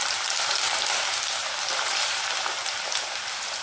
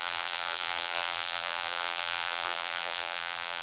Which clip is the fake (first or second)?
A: second